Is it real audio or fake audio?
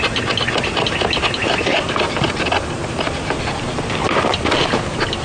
real